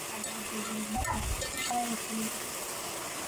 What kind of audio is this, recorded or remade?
recorded